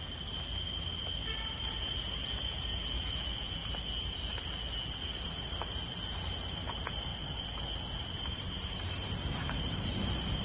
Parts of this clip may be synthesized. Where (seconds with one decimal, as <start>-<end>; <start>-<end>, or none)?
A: none